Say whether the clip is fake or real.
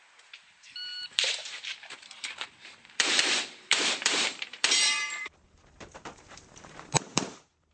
fake